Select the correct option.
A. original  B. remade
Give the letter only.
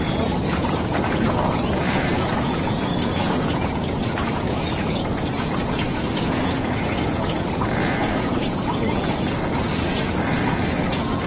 B